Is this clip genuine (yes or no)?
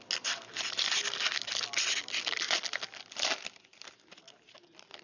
yes